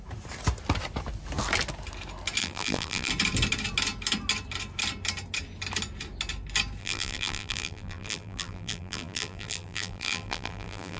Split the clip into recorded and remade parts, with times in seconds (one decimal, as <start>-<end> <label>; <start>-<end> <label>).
0.0-2.4 recorded; 2.4-3.1 remade; 3.1-6.8 recorded; 6.8-11.0 remade